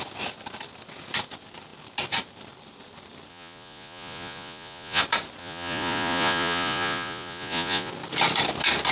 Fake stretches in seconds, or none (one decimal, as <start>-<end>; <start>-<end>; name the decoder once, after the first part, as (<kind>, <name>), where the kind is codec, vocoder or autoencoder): 3.3-5.0 (vocoder, Vocos); 5.4-7.9